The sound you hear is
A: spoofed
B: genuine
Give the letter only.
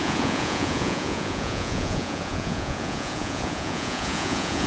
A